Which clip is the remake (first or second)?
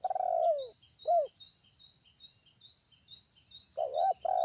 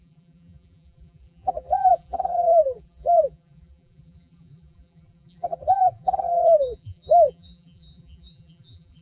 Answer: second